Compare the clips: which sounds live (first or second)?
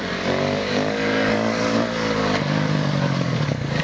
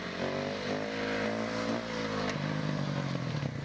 second